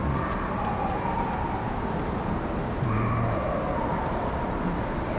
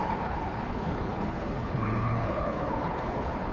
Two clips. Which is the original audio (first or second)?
first